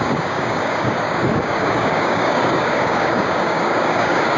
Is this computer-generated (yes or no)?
yes